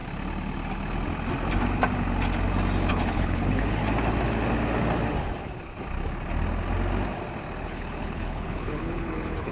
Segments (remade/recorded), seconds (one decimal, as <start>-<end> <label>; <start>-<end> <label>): 0.0-2.9 recorded; 2.9-3.8 remade; 3.8-7.6 recorded; 7.6-9.5 remade